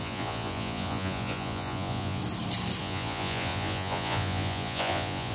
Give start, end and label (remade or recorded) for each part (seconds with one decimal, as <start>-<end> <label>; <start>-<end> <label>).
0.0-2.2 remade; 2.2-2.8 recorded; 2.8-5.3 remade